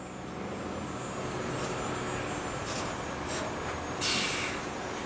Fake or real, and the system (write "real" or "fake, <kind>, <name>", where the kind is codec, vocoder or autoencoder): real